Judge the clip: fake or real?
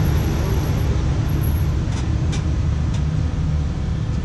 real